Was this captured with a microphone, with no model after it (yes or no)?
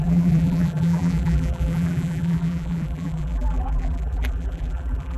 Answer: no